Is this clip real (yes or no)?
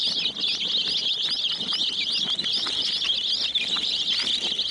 yes